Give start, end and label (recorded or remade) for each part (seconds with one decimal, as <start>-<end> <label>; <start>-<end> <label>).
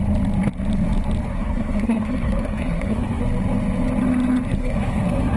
0.0-1.3 recorded; 1.3-3.2 remade; 3.2-4.6 recorded; 4.6-5.4 remade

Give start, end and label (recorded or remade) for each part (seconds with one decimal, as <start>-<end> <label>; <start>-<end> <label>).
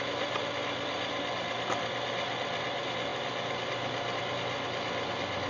0.0-5.5 recorded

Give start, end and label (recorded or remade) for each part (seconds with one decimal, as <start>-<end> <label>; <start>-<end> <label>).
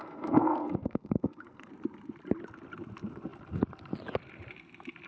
0.0-1.7 remade; 1.7-5.1 recorded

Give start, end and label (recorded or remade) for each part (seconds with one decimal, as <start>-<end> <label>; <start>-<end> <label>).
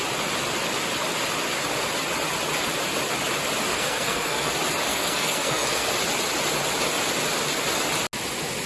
0.0-3.7 recorded; 3.7-4.5 remade; 4.5-4.9 recorded; 4.9-5.9 remade; 5.9-8.7 recorded